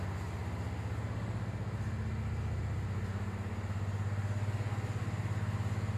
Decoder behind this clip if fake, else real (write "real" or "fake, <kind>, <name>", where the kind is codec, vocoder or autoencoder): real